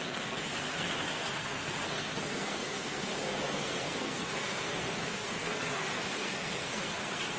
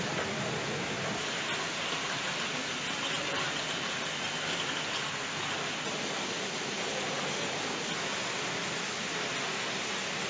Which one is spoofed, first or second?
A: first